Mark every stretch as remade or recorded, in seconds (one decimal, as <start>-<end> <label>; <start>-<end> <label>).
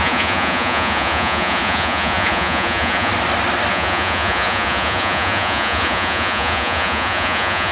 0.0-3.1 remade; 3.1-3.7 recorded; 3.7-7.7 remade